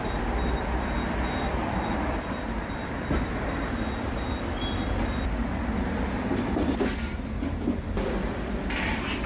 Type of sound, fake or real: real